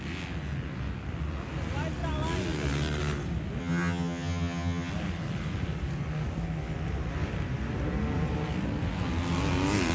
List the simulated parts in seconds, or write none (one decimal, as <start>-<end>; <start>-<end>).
3.6-4.9